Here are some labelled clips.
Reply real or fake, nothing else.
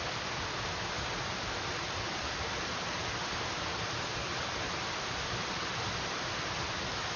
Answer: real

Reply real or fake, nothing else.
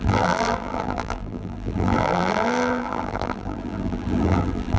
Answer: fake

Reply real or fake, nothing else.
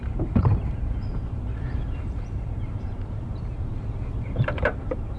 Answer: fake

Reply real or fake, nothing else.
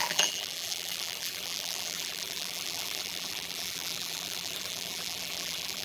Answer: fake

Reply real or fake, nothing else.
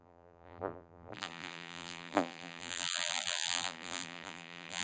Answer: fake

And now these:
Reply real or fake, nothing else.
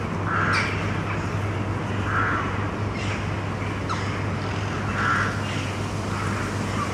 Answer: real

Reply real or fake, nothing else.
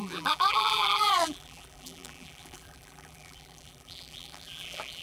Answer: fake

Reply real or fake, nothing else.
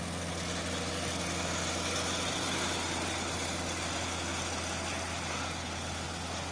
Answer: real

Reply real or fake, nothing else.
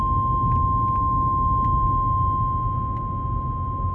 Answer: real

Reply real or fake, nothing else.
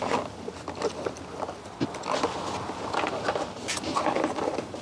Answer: real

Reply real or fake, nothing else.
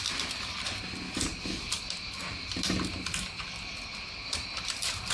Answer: real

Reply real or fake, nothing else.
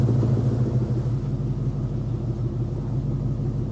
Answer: real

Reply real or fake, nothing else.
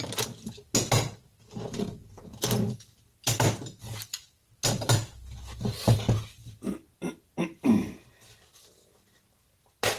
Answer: real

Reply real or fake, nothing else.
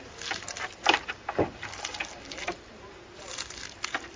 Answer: fake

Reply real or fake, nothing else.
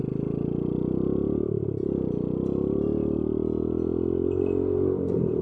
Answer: real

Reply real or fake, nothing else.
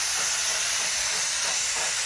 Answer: real